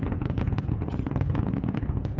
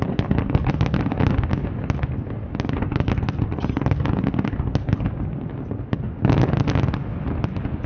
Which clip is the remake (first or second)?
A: first